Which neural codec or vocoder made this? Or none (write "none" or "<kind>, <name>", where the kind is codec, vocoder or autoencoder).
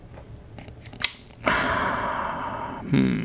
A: none